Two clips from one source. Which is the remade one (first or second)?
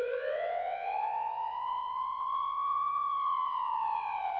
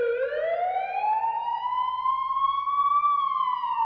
first